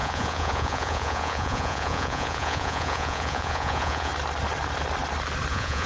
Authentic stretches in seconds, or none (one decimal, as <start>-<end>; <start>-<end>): 4.1-5.5